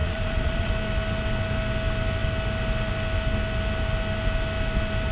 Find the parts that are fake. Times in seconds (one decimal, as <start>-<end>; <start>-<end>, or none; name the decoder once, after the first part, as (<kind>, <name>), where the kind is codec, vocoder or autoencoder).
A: 0.0-0.7 (vocoder, Vocos)